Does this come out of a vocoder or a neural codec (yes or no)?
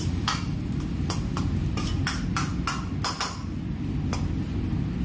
no